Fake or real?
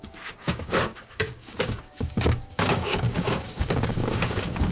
fake